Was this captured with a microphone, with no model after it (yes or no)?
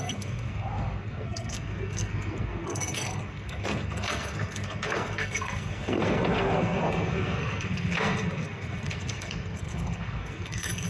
no